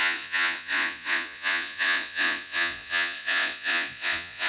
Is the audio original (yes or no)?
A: no